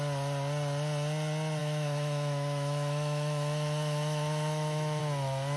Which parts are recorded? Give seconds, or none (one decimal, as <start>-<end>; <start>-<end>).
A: 0.0-1.6; 5.0-5.6